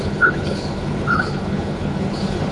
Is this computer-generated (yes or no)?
yes